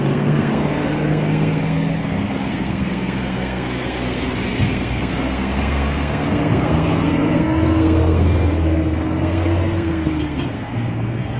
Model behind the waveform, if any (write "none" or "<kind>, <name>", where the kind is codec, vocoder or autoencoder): codec, SNAC